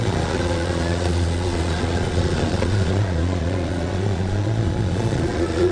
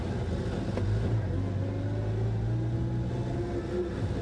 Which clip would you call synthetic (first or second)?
first